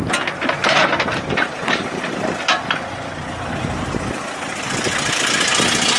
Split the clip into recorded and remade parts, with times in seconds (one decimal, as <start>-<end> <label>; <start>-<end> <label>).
0.0-0.6 recorded; 0.6-4.2 remade; 4.2-6.0 recorded